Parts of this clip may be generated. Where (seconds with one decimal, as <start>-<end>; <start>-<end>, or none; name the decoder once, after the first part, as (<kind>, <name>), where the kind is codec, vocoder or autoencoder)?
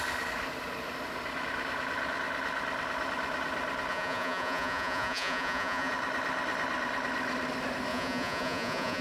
3.9-5.9 (vocoder, Vocos); 7.9-9.0